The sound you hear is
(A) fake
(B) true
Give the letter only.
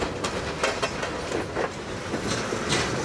B